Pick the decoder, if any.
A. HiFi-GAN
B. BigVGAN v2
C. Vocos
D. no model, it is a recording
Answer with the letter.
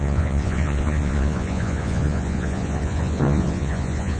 C